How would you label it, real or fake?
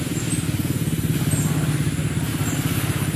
real